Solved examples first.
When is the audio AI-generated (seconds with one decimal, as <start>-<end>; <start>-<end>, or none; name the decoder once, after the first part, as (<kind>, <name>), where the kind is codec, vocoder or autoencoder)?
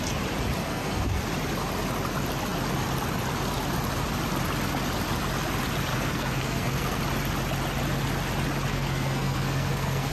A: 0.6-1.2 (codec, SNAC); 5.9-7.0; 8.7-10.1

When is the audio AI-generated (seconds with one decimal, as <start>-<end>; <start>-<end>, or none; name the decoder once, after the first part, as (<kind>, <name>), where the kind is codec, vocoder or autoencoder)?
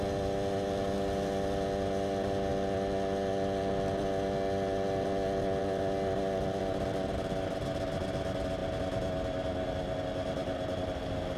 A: none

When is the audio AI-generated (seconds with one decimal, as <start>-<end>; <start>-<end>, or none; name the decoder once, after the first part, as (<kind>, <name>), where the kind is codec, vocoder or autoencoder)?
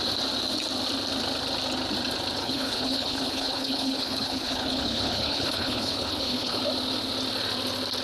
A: 2.4-6.6 (codec, HILCodec)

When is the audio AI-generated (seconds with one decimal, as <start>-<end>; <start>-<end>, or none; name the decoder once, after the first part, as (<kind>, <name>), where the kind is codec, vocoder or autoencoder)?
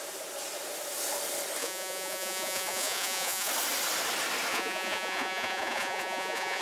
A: 1.6-3.5 (vocoder, Vocos); 4.5-6.6